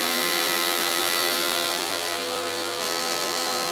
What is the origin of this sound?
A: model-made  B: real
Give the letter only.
A